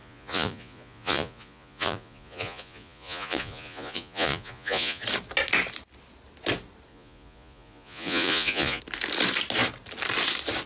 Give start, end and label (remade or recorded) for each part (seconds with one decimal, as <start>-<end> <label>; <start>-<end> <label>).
0.0-5.0 remade; 5.0-6.9 recorded; 6.9-8.8 remade; 8.8-10.7 recorded